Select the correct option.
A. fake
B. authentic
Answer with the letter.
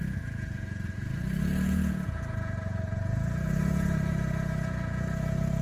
A